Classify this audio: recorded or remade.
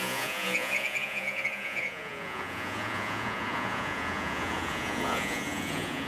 remade